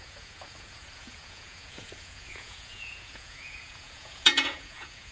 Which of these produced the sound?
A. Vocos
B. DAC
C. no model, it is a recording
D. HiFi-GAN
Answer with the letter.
A